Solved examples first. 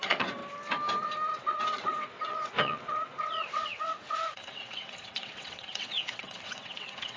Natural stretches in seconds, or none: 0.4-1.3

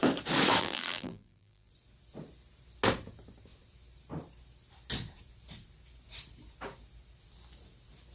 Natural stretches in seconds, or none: 0.0-0.6; 1.7-8.1